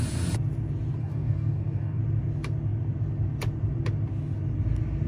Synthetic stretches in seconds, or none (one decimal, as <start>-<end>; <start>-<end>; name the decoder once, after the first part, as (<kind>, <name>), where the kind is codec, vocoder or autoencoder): 1.0-2.0 (codec, DAC)